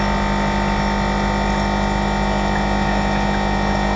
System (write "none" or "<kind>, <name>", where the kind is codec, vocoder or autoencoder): none